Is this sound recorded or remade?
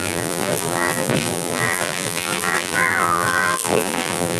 remade